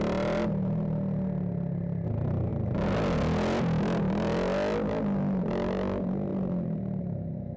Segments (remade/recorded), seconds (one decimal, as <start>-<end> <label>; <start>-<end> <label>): 0.0-7.6 recorded